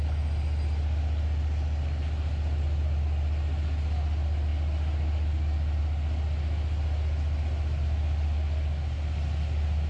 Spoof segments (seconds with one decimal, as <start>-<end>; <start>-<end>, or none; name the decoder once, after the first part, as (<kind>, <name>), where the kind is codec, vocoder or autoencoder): none